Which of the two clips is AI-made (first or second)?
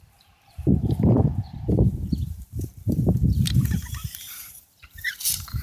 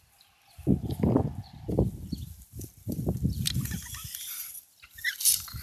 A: first